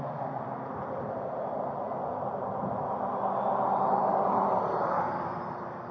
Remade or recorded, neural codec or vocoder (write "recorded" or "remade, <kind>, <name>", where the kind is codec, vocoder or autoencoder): recorded